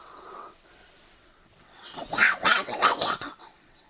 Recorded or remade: remade